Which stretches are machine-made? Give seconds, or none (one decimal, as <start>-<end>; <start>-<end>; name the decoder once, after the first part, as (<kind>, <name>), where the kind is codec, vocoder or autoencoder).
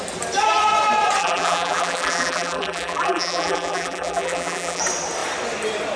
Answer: 1.2-4.8 (vocoder, BigVGAN v2)